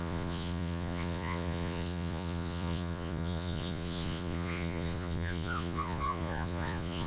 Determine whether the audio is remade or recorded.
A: remade